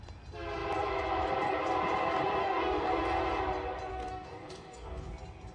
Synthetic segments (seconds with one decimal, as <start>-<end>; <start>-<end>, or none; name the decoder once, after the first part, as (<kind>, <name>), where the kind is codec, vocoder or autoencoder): 2.4-2.9 (codec, DAC); 3.9-5.1